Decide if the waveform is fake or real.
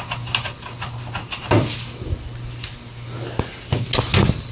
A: real